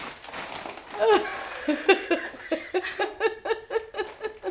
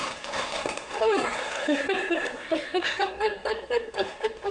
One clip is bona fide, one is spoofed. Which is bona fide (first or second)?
first